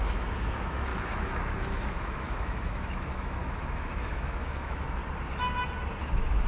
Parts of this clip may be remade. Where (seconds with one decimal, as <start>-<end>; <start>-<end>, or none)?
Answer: 0.0-5.0; 6.0-6.5